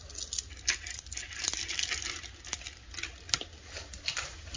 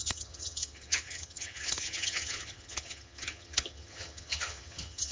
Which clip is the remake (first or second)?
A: second